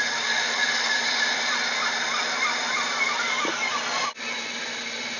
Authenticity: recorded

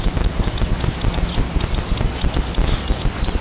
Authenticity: recorded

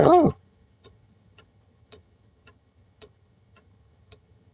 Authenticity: remade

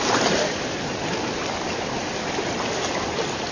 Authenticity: recorded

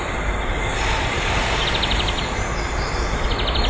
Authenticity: recorded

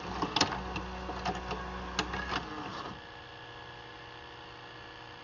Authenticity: recorded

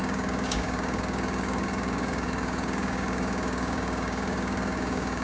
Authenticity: remade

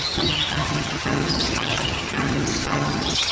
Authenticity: remade